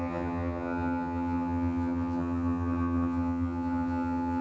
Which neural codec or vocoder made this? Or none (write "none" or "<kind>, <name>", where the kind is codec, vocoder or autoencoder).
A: vocoder, HiFi-GAN